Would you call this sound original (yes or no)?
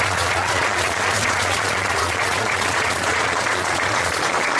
no